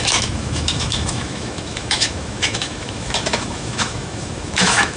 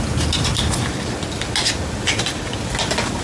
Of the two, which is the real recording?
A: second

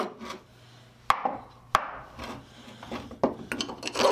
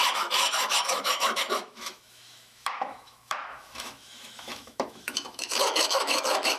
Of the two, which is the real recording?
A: first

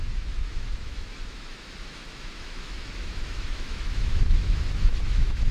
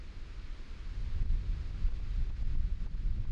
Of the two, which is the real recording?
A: second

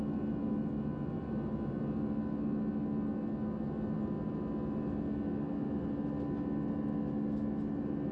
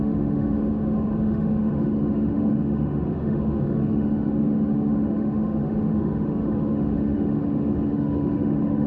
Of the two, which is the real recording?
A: first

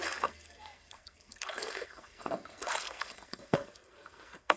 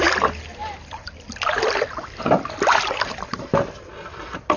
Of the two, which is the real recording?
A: second